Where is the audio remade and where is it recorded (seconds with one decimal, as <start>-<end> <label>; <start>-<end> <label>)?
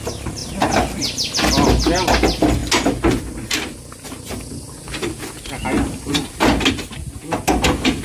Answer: 0.0-8.0 recorded